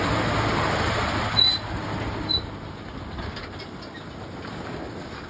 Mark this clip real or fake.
real